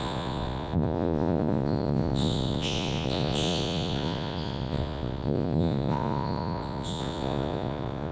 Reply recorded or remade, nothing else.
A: remade